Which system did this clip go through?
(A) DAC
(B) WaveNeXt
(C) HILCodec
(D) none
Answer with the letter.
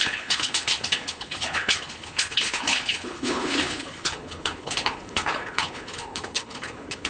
C